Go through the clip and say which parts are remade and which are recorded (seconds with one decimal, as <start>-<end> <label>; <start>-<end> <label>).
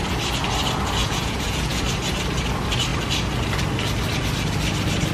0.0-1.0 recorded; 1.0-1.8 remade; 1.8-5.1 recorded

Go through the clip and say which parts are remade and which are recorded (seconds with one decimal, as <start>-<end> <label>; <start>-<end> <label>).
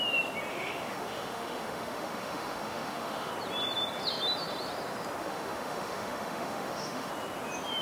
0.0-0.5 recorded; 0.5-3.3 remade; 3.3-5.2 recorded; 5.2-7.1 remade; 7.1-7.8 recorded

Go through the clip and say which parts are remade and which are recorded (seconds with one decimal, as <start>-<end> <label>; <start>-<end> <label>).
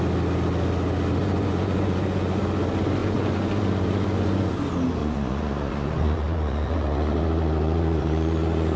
0.0-1.2 recorded; 1.2-2.4 remade; 2.4-3.0 recorded; 3.0-4.5 remade; 4.5-5.0 recorded; 5.0-8.8 remade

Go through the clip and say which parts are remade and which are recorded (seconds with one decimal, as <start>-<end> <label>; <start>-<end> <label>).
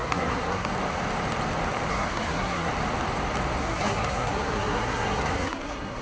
0.0-0.7 remade; 0.7-1.9 recorded; 1.9-2.7 remade; 2.7-3.6 recorded; 3.6-6.0 remade